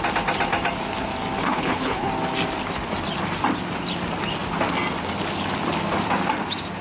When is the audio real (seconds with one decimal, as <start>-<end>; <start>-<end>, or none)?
0.0-1.4; 2.1-6.8